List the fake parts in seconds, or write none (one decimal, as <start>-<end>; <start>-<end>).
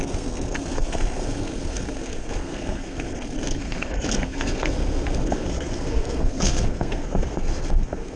0.0-8.2